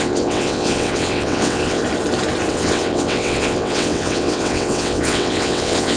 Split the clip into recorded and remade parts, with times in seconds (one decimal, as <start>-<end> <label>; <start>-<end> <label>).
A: 0.0-1.8 remade; 1.8-2.5 recorded; 2.5-6.0 remade